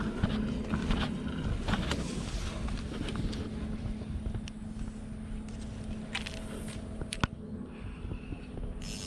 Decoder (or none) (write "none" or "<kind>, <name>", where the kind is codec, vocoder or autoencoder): none